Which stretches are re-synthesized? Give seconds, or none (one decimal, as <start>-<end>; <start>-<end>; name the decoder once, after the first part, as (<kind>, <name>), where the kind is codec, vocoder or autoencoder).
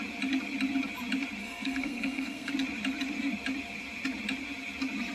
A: 1.4-2.5 (codec, SNAC)